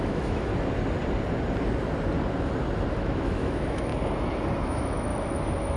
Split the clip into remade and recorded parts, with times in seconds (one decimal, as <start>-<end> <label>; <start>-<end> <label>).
0.0-0.5 remade; 0.5-2.9 recorded; 2.9-3.9 remade; 3.9-4.6 recorded; 4.6-5.1 remade; 5.1-5.8 recorded